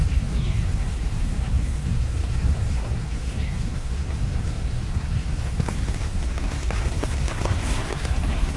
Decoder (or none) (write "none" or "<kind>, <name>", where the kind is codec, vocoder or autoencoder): codec, SNAC